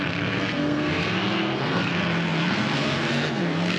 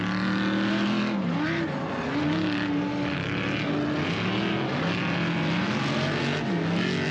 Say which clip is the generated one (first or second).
first